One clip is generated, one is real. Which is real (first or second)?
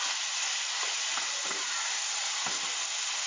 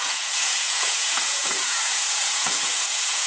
first